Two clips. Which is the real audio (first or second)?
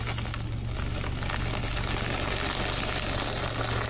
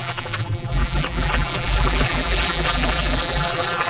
first